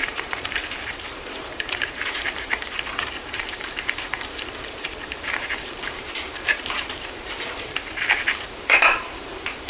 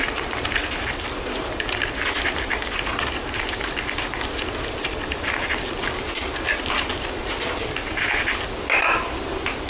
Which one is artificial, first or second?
first